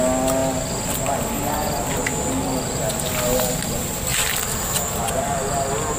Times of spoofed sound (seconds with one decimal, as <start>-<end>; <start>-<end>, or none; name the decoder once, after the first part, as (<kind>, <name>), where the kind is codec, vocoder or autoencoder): none